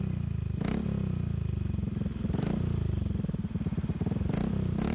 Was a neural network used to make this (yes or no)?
no